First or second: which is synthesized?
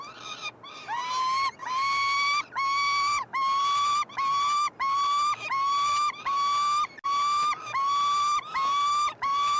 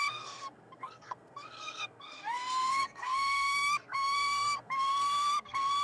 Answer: second